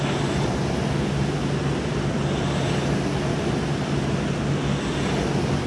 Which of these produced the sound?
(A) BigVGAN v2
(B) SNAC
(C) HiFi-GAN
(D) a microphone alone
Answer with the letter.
D